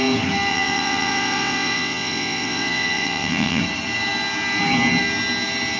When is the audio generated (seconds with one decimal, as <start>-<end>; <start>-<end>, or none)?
0.5-3.6